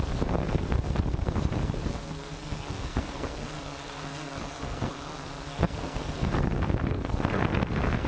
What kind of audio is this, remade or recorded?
remade